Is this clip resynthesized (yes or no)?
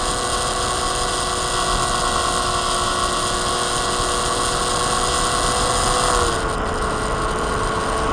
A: no